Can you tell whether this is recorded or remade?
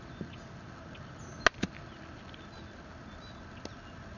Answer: recorded